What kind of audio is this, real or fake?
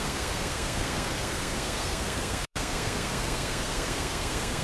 fake